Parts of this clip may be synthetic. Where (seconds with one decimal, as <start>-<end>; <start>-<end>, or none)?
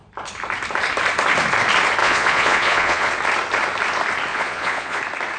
2.0-3.1; 4.3-5.0